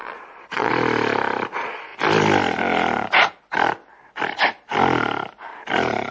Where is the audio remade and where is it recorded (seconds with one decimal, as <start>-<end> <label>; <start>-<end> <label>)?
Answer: 0.0-0.7 remade; 0.7-6.1 recorded